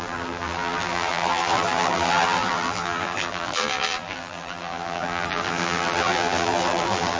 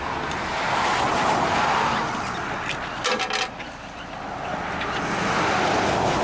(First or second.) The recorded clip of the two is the second